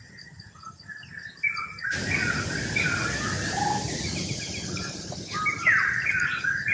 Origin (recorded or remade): recorded